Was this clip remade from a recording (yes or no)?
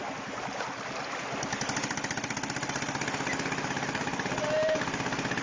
no